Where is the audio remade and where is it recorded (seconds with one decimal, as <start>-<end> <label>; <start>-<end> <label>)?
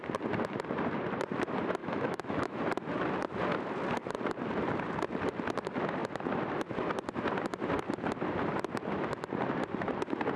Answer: 0.0-1.8 recorded; 1.8-2.6 remade; 2.6-10.4 recorded